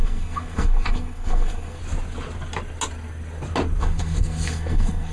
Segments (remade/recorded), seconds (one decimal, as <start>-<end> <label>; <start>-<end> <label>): 0.0-1.8 remade; 1.8-3.8 recorded; 3.8-5.1 remade